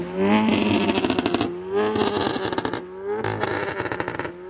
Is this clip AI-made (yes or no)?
no